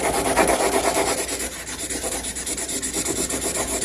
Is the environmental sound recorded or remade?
recorded